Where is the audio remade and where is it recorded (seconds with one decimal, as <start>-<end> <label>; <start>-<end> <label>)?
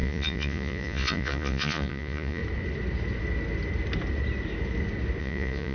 0.0-2.4 remade; 2.4-5.2 recorded; 5.2-5.7 remade